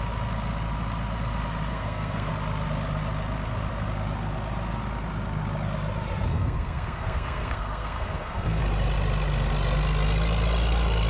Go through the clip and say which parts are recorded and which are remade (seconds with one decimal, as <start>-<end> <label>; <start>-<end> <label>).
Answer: 0.0-1.7 recorded; 1.7-2.3 remade; 2.3-6.3 recorded; 6.3-8.6 remade; 8.6-11.1 recorded